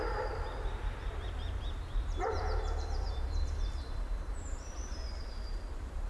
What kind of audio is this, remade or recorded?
remade